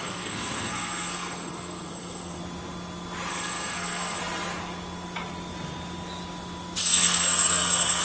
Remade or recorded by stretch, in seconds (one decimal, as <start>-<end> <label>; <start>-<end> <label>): 0.0-2.4 remade; 2.4-3.3 recorded; 3.3-4.2 remade; 4.2-6.8 recorded; 6.8-8.0 remade